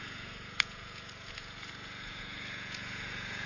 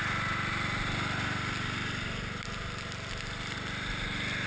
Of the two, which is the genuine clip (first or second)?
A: second